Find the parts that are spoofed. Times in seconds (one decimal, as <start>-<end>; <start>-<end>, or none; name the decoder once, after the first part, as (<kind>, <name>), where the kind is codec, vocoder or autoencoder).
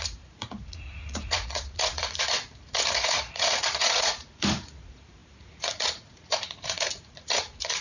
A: 0.0-7.8 (vocoder, Vocos)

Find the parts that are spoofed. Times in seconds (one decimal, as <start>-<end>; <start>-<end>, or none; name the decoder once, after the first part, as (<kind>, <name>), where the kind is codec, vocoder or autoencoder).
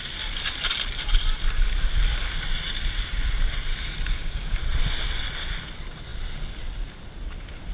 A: none